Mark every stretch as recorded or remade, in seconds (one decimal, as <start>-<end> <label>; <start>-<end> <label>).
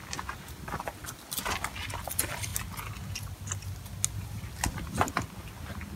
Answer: 0.0-0.5 recorded; 0.5-1.0 remade; 1.0-2.0 recorded; 2.0-2.5 remade; 2.5-4.2 recorded; 4.2-6.0 remade